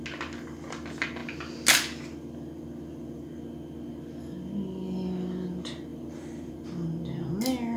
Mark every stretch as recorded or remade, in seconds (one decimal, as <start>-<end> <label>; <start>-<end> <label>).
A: 0.0-5.9 recorded; 5.9-6.5 remade; 6.5-7.8 recorded